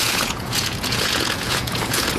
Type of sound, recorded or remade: remade